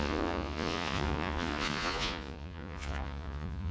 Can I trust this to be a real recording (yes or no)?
no